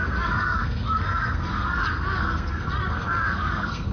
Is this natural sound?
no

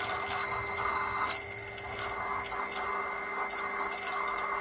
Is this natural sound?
yes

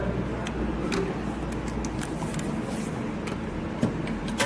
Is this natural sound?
yes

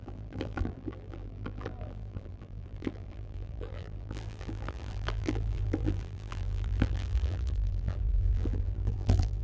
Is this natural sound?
no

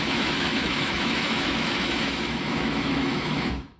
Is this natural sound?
no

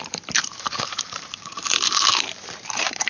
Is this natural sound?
no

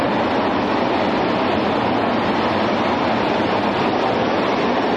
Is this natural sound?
yes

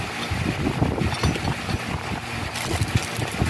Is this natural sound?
yes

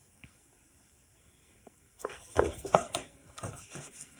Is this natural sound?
no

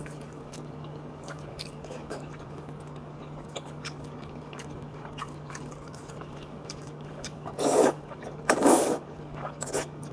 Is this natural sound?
no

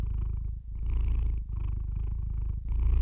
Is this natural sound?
yes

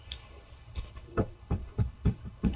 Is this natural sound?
no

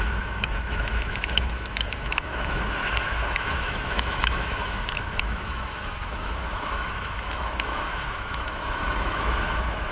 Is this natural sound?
no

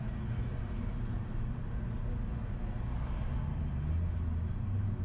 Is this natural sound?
yes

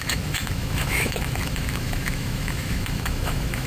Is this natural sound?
no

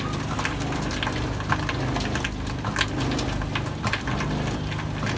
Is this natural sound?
yes